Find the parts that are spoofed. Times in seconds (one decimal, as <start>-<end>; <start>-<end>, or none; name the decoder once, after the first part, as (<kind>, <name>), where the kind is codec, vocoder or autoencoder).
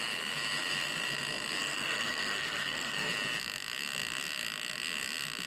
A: 1.6-3.1 (codec, SNAC)